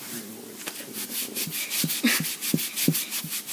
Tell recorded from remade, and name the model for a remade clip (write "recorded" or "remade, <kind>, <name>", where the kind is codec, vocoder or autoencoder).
recorded